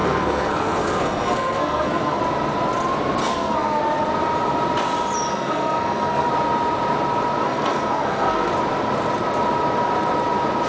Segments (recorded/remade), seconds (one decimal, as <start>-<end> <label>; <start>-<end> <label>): 0.0-2.2 remade; 2.2-3.2 recorded; 3.2-3.8 remade; 3.8-5.3 recorded; 5.3-6.3 remade; 6.3-7.4 recorded; 7.4-8.5 remade; 8.5-10.7 recorded